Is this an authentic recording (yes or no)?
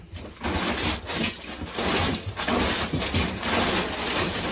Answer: yes